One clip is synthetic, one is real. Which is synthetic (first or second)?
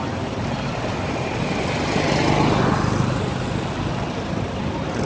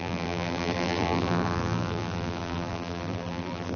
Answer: second